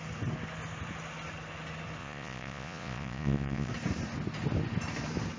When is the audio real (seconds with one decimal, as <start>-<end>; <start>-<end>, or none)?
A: 0.0-2.0; 3.7-5.4